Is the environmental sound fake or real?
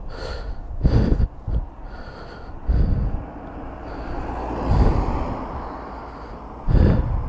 real